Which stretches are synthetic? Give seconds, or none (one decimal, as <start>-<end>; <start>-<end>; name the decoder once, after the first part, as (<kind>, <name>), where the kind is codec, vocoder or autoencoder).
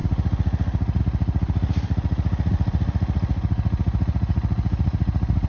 none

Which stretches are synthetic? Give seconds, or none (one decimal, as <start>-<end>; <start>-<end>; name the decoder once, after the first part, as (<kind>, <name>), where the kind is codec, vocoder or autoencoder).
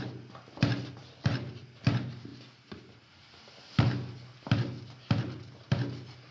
none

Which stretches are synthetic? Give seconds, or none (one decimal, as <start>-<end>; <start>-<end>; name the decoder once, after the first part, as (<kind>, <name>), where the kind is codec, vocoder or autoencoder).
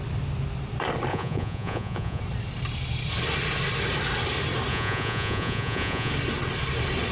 1.1-2.2 (vocoder, Vocos); 4.7-6.1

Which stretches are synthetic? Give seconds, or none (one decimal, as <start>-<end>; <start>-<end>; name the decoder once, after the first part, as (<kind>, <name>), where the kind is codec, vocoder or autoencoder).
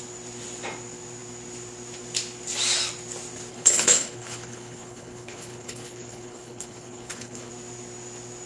3.5-7.5 (codec, HILCodec)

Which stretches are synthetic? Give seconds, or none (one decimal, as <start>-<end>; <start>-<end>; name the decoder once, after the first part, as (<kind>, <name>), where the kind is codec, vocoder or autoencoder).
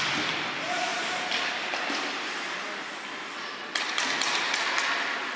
none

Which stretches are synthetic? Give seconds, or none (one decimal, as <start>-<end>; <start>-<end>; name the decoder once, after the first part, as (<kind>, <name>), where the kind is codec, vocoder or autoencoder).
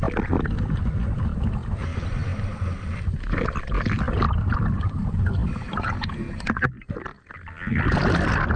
none